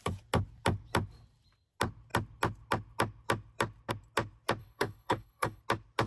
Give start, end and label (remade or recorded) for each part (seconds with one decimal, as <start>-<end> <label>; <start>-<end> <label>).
0.0-4.6 recorded; 4.6-5.6 remade; 5.6-6.1 recorded